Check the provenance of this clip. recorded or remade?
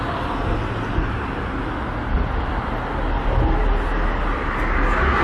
recorded